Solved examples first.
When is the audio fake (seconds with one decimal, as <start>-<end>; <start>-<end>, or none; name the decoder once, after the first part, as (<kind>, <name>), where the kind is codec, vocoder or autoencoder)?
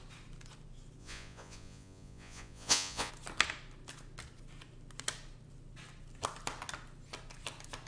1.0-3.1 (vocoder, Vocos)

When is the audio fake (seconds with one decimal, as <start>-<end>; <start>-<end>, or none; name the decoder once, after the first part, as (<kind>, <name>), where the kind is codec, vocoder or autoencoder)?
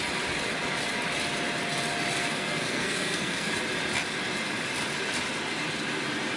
2.2-3.5 (codec, SNAC)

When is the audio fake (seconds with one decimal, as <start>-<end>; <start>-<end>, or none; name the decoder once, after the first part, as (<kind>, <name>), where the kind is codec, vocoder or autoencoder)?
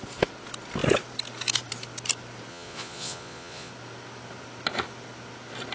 2.5-3.7 (vocoder, Vocos)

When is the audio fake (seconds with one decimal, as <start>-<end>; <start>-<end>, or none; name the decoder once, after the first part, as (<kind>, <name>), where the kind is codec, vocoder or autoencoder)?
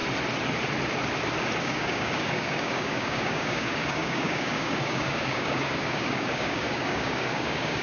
1.6-7.8 (codec, DAC)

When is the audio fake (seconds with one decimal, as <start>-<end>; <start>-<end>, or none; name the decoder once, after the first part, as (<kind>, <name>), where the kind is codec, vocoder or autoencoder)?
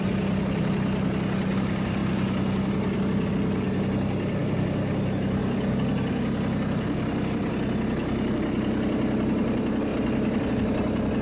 4.4-4.9 (vocoder, BigVGAN v2); 9.9-10.5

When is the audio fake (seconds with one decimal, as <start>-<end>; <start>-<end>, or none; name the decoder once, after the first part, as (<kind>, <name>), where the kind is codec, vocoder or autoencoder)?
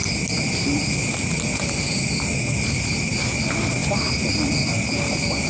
none